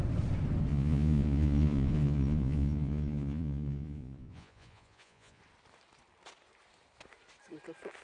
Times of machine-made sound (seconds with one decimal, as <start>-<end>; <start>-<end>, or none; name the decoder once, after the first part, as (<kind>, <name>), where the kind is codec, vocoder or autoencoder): 0.7-5.4 (vocoder, Vocos)